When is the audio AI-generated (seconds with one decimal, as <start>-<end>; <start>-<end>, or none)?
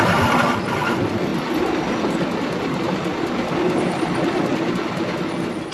none